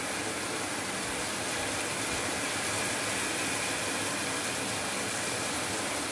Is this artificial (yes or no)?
no